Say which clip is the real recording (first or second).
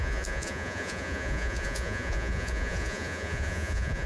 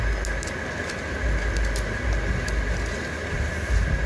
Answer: second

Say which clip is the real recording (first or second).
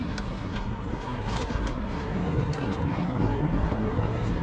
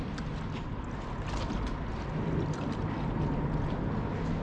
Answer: second